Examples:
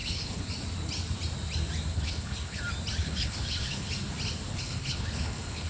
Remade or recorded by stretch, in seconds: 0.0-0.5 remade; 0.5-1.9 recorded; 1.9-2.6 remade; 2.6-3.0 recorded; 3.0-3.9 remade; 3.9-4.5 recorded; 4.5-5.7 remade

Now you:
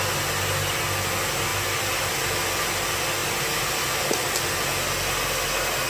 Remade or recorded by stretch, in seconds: 0.0-5.9 recorded

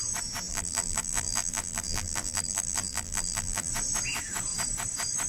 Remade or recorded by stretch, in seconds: 0.0-0.5 recorded; 0.5-3.7 remade; 3.7-5.3 recorded

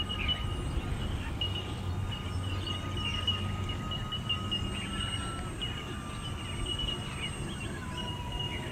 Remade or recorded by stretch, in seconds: 0.0-0.9 recorded; 0.9-1.9 remade; 1.9-3.1 recorded; 3.1-3.8 remade; 3.8-8.7 recorded

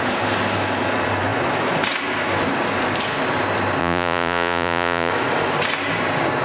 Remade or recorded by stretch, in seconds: 0.0-3.8 recorded; 3.8-5.1 remade; 5.1-6.4 recorded